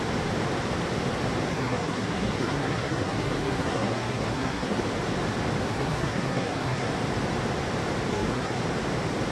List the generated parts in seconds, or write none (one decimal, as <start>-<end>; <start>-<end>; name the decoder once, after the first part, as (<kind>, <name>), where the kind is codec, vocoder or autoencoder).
1.5-4.8 (codec, SNAC); 5.6-6.9; 8.1-8.6